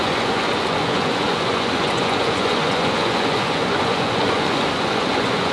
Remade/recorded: remade